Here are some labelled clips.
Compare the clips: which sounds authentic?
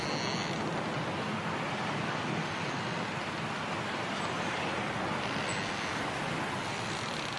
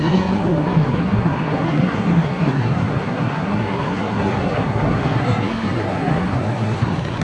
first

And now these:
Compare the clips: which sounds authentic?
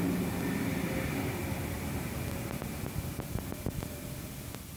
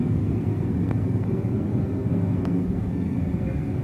first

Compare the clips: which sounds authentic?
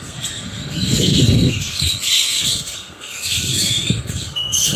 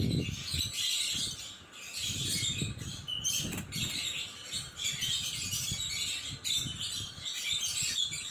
second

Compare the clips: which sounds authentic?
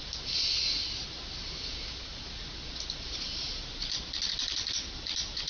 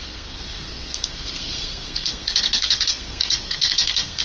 first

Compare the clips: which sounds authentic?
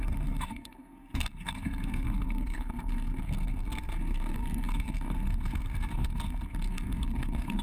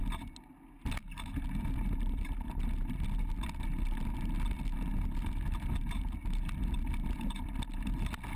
second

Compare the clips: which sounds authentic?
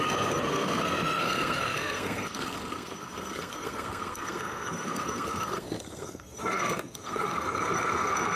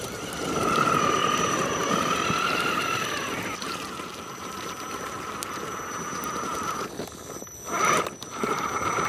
second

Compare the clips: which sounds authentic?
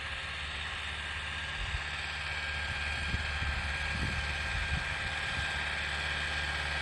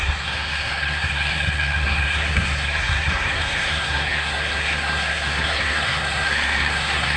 first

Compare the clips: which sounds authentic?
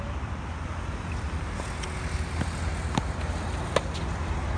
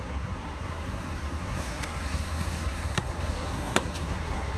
first